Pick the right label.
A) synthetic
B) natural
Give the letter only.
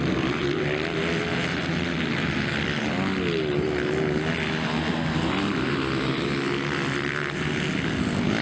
B